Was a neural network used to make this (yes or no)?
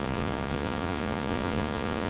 yes